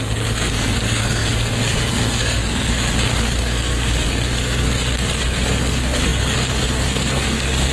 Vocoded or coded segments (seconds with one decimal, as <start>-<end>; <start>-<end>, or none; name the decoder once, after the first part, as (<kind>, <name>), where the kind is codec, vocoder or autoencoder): 0.0-7.7 (codec, SNAC)